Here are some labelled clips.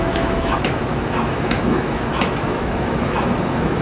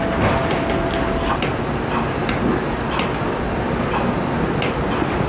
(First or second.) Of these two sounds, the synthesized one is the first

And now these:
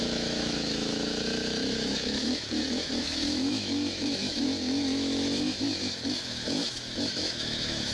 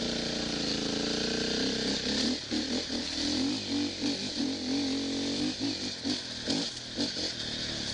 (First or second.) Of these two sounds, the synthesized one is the first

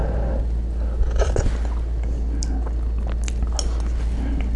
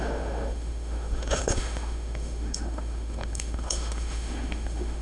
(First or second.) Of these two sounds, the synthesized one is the second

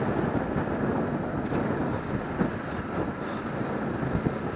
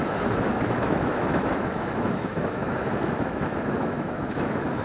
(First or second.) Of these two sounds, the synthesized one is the second